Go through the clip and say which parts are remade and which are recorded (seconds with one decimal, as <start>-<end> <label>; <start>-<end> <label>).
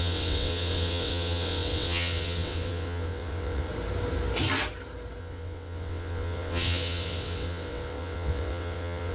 0.0-3.7 remade; 3.7-5.2 recorded; 5.2-9.1 remade